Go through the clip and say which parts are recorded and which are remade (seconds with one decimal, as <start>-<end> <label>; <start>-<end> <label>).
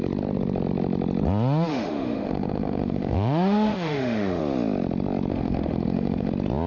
0.0-1.7 recorded; 1.7-4.4 remade; 4.4-5.3 recorded; 5.3-6.3 remade; 6.3-6.7 recorded